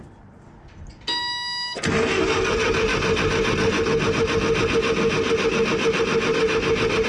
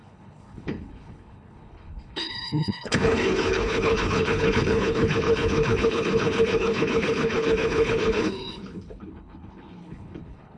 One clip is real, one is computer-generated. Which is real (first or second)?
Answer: first